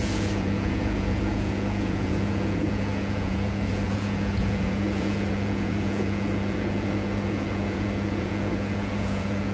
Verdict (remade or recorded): remade